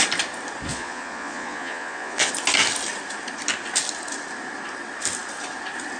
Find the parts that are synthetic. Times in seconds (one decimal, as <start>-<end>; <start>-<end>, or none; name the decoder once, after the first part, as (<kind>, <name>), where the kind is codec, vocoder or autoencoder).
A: 0.7-2.3 (vocoder, Vocos)